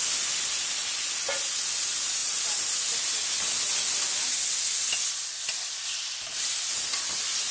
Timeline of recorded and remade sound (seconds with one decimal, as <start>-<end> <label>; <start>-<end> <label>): 0.0-7.5 recorded